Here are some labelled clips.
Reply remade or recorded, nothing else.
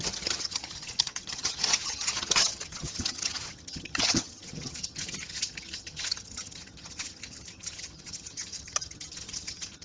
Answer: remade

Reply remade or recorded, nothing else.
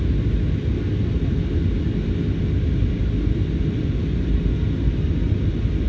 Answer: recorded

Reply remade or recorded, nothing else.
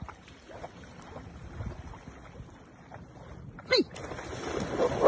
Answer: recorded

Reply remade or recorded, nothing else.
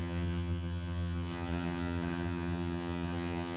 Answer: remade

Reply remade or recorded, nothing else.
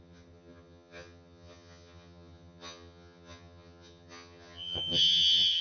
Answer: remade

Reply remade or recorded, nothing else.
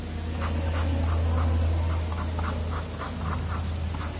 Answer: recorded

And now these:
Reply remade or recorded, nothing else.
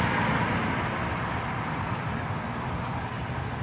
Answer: recorded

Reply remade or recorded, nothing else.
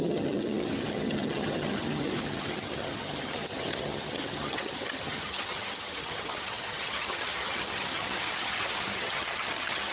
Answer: remade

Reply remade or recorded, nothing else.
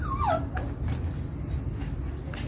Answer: recorded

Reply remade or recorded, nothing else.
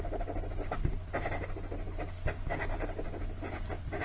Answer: recorded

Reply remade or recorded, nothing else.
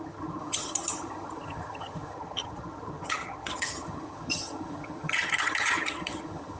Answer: remade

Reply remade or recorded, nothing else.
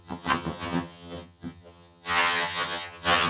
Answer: remade